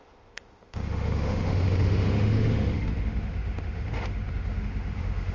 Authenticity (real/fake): fake